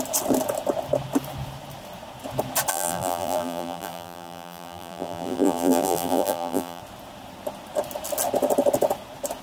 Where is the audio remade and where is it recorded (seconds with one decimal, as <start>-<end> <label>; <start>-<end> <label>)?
0.0-2.7 recorded; 2.7-6.8 remade; 6.8-9.4 recorded